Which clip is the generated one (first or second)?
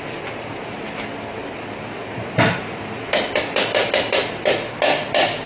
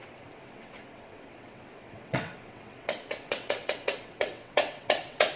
second